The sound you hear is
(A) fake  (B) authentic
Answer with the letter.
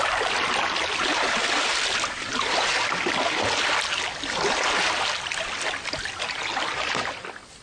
B